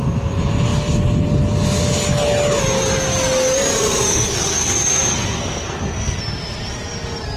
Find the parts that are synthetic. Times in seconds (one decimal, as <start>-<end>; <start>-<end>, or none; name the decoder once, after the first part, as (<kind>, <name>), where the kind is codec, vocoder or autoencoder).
4.1-6.2 (codec, SNAC)